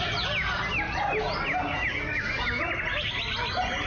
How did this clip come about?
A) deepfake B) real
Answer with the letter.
B